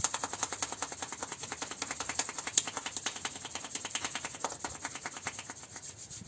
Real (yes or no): yes